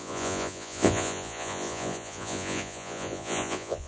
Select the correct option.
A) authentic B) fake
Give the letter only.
B